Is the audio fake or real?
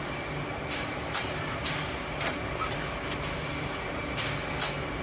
real